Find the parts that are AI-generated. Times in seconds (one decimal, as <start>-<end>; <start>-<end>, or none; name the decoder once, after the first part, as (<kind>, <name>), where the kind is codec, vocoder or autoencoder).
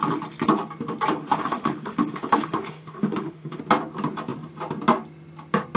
1.2-3.6 (autoencoder, DAC-VAE)